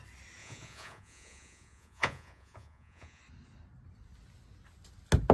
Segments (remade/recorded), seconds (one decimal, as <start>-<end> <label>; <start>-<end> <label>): 0.0-0.4 recorded; 0.4-3.2 remade; 3.2-5.3 recorded